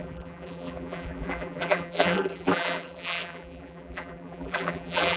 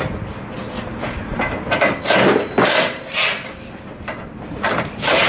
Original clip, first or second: second